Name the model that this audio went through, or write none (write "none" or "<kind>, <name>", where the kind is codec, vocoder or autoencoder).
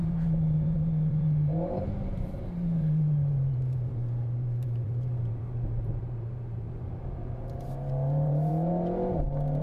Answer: vocoder, BigVGAN v2